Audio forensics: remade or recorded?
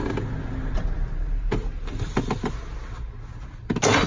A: recorded